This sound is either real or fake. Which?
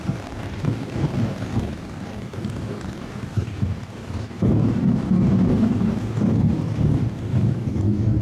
fake